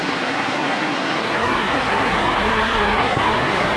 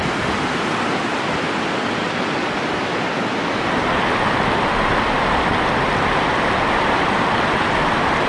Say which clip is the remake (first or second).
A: first